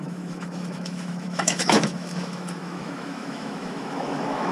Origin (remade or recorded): remade